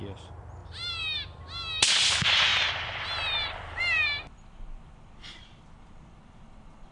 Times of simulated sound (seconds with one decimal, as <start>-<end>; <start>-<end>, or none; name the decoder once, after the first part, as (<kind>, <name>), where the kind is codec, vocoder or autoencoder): 0.6-1.4 (vocoder, BigVGAN v2); 2.5-6.9